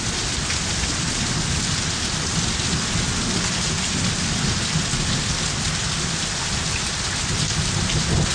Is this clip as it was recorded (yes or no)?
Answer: yes